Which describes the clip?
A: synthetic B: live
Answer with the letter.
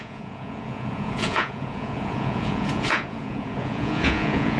A